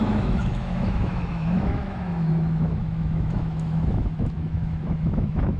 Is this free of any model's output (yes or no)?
no